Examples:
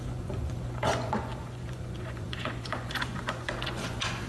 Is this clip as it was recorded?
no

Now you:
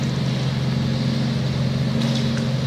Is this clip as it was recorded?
yes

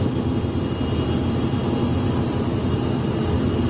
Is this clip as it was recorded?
yes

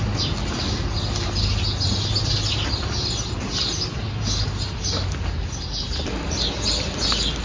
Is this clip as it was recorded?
yes